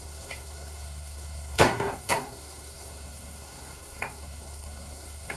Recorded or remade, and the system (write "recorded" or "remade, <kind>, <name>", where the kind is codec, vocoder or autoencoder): remade, codec, SNAC